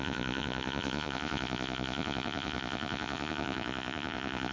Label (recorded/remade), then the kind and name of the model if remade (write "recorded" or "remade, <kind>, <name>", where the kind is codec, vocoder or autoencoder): remade, vocoder, Vocos